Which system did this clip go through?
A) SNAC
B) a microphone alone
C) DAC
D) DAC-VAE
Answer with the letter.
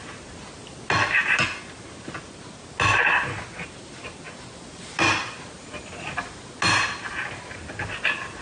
B